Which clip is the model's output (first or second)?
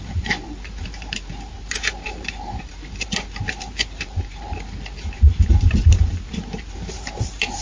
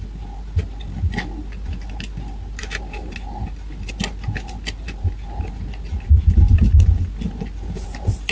first